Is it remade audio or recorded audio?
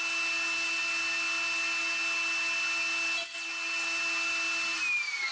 recorded